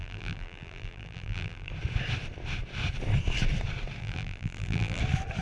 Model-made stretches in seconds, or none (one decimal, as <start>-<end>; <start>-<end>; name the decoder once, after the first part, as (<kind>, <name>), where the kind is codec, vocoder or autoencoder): 0.0-1.7 (vocoder, BigVGAN v2); 4.0-5.0